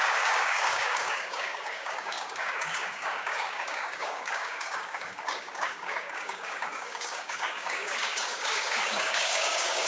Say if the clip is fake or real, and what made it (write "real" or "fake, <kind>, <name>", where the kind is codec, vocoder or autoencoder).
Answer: fake, codec, DAC